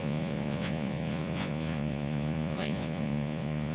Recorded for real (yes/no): no